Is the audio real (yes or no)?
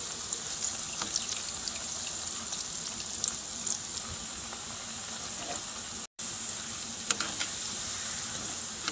yes